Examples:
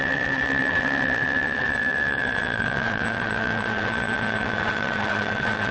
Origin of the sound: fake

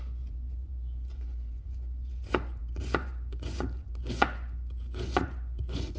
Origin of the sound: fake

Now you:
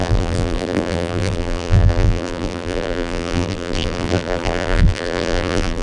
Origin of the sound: fake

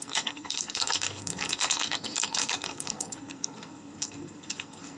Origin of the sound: fake